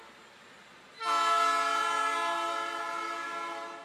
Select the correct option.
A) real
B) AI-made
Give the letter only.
A